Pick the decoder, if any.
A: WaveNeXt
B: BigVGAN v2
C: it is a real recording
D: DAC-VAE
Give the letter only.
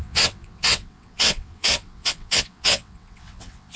A